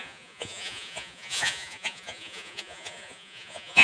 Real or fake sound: fake